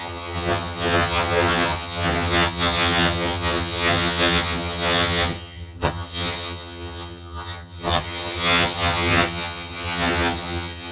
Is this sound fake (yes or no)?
yes